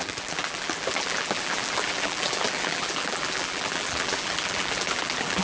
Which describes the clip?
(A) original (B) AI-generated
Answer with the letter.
B